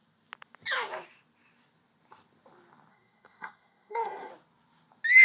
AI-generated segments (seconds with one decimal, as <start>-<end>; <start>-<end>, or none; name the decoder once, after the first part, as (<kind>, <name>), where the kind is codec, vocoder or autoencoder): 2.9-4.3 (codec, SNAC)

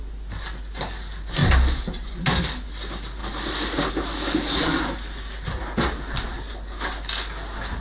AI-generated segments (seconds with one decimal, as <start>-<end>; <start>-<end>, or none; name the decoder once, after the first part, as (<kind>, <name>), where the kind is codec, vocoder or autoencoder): none

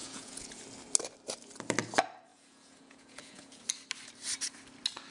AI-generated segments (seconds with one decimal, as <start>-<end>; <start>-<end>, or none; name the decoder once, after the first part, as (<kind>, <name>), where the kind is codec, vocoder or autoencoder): 0.0-0.6 (vocoder, Vocos); 2.3-3.6